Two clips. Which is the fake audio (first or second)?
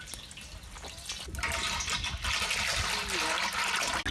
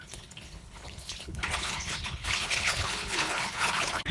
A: second